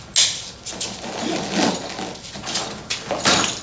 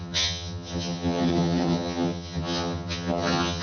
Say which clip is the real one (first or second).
first